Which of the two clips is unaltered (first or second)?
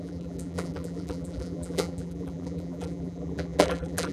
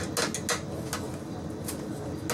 second